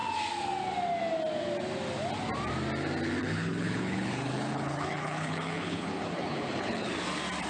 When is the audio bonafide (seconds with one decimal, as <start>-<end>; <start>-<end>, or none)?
0.0-3.2; 6.9-7.5